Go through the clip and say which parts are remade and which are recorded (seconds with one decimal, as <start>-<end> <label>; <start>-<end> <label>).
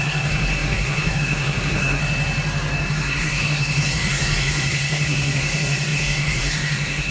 0.0-2.0 remade; 2.0-2.9 recorded; 2.9-7.1 remade